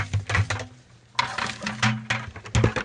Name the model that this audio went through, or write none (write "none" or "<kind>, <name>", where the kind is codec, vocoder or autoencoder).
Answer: none